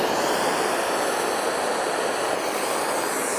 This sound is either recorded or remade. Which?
recorded